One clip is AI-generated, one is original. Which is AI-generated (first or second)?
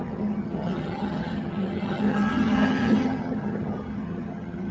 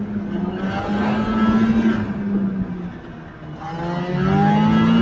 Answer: first